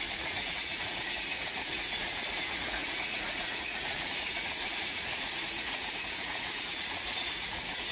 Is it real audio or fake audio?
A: fake